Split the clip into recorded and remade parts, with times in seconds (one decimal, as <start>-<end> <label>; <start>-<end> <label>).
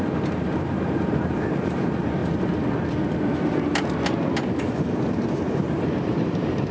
0.0-2.2 remade; 2.2-5.1 recorded; 5.1-6.7 remade